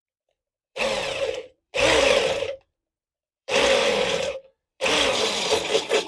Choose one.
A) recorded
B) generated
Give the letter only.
B